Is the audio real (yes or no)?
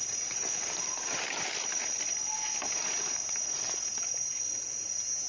yes